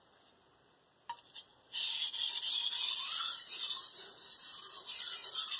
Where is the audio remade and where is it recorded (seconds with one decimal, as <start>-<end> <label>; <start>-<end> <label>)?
0.0-1.5 recorded; 1.5-4.5 remade; 4.5-5.6 recorded